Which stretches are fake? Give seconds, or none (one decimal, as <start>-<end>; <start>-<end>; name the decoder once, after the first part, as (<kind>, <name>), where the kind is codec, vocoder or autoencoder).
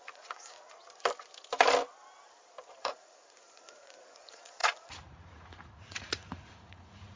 0.0-0.8 (vocoder, Vocos); 2.8-7.2